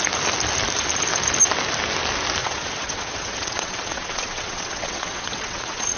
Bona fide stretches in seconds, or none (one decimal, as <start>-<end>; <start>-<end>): 0.0-2.4